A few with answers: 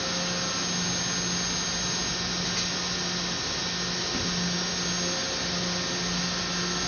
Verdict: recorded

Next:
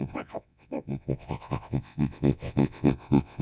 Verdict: remade